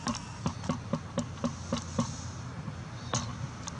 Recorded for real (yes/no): yes